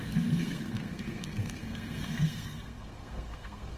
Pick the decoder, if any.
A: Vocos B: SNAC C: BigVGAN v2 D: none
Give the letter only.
B